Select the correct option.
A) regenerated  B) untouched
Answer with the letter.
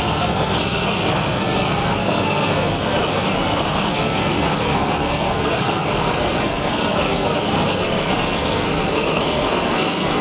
A